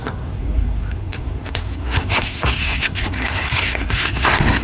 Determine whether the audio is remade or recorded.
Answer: remade